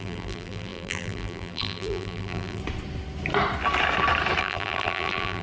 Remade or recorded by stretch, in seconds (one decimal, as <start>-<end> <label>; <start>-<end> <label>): 0.0-2.6 remade; 2.6-4.4 recorded; 4.4-5.4 remade